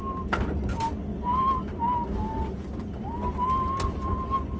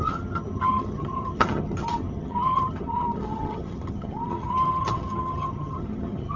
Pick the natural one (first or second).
first